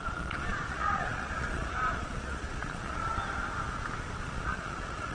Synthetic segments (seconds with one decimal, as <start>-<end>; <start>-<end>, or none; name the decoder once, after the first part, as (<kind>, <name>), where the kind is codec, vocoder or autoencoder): 0.0-3.0 (vocoder, Vocos); 4.2-5.1